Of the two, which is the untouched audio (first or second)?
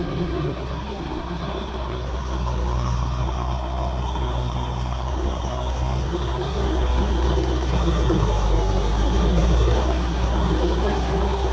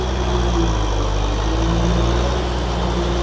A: second